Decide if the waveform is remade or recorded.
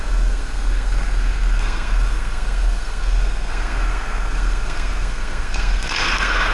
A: remade